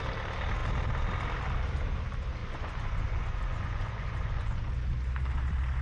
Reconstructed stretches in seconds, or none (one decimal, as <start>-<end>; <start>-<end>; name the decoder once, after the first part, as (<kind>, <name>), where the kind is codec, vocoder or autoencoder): 2.4-4.7 (vocoder, Vocos)

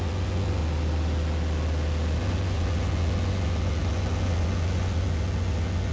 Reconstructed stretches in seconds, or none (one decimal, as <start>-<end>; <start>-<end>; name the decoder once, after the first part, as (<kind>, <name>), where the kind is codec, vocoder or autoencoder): 0.0-0.6 (vocoder, Vocos); 2.2-5.9

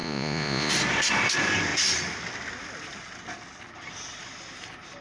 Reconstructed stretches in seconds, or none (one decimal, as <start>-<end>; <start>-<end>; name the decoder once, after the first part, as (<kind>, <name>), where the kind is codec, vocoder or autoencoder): 0.0-0.7 (vocoder, Vocos)

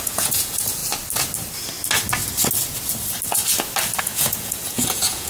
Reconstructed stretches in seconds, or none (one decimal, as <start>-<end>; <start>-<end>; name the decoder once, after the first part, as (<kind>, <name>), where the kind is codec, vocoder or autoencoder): 0.0-0.8 (vocoder, Vocos); 4.0-5.3

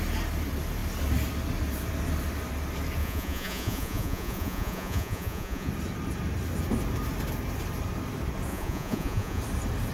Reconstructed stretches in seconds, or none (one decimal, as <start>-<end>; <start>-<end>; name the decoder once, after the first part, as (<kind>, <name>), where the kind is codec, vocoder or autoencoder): 3.0-5.7 (vocoder, Vocos); 8.5-9.4

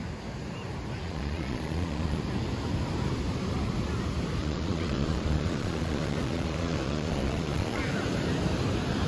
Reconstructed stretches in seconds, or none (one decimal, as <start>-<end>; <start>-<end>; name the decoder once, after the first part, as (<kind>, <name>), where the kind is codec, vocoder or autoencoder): 1.0-2.2 (vocoder, Vocos); 4.4-7.8